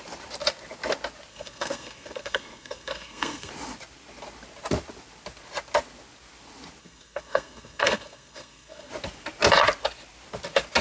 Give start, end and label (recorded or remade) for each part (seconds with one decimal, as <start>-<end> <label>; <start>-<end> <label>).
0.0-1.3 recorded; 1.3-3.5 remade; 3.5-6.8 recorded; 6.8-8.9 remade; 8.9-10.8 recorded

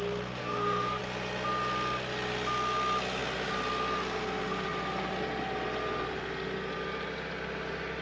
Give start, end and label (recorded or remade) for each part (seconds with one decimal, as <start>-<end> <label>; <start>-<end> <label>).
0.0-0.4 recorded; 0.4-1.0 remade; 1.0-8.0 recorded

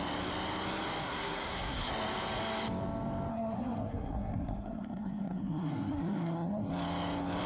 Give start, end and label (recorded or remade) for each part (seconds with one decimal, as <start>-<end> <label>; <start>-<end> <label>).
0.0-1.0 recorded; 1.0-1.9 remade; 1.9-3.3 recorded; 3.3-6.7 remade; 6.7-7.5 recorded